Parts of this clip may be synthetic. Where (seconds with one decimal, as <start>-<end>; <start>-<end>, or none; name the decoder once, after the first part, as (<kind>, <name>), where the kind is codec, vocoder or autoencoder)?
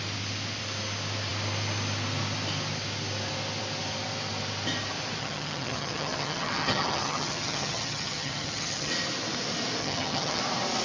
5.2-8.9 (vocoder, HiFi-GAN); 9.8-10.4